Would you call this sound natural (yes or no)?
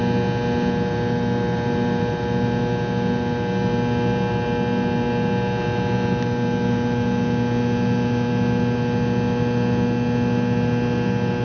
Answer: yes